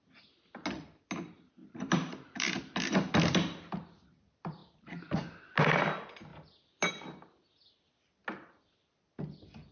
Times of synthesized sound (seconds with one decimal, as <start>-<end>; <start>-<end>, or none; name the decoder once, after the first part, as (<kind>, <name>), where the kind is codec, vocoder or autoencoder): 1.6-2.6 (vocoder, BigVGAN v2); 4.6-5.4